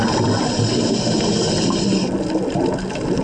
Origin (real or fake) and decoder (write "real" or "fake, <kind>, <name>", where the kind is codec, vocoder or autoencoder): real